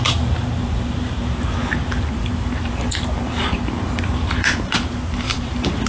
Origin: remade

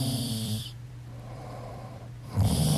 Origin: remade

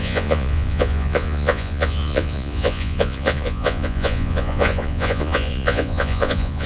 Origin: remade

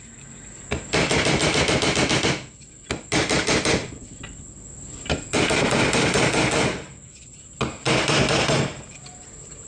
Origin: recorded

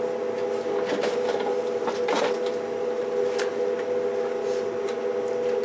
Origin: recorded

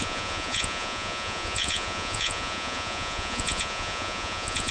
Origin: remade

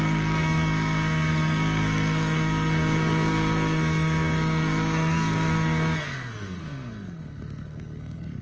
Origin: remade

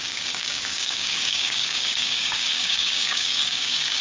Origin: remade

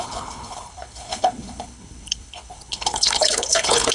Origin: remade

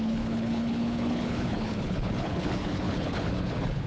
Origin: remade